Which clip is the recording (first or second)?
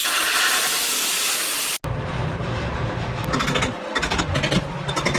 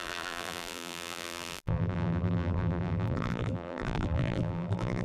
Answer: first